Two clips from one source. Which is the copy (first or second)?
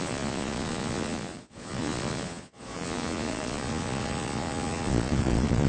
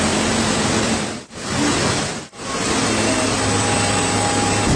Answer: first